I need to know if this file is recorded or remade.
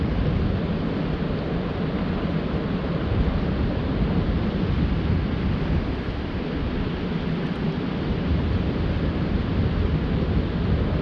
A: recorded